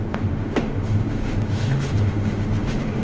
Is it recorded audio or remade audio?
remade